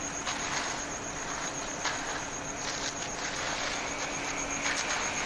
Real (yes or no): yes